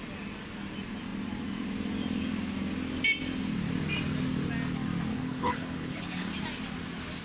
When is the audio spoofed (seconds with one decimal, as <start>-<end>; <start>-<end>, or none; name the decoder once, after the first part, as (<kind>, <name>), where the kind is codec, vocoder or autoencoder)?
5.1-6.3 (codec, HILCodec)